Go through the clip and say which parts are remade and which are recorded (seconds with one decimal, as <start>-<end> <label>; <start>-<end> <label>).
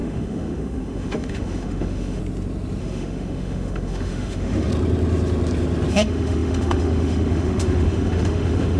0.0-2.2 remade; 2.2-2.8 recorded; 2.8-4.7 remade; 4.7-5.9 recorded; 5.9-8.8 remade